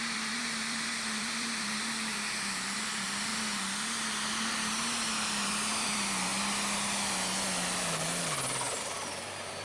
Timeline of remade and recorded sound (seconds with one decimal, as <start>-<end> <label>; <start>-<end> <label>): 0.0-2.1 remade; 2.1-2.9 recorded; 2.9-3.3 remade; 3.3-5.5 recorded; 5.5-6.3 remade; 6.3-8.8 recorded; 8.8-9.6 remade